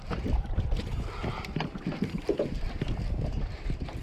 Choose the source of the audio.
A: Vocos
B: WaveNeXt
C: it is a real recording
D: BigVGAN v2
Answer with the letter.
D